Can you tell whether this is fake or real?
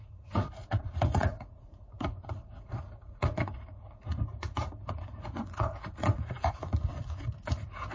fake